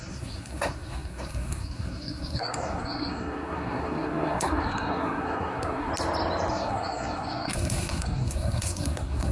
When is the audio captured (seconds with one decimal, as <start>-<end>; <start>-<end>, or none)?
5.9-6.5